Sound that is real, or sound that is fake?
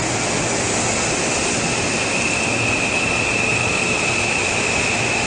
real